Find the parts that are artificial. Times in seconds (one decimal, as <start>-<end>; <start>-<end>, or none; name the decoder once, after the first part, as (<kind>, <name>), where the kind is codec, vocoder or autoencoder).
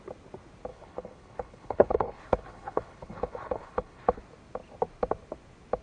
0.7-4.2 (codec, HILCodec)